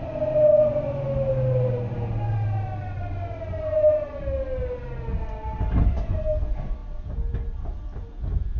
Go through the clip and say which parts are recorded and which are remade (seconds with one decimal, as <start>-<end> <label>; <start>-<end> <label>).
0.0-8.6 recorded